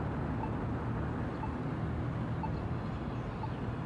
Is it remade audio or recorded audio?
recorded